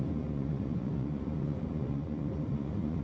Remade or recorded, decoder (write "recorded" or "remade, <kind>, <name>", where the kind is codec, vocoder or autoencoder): remade, vocoder, Vocos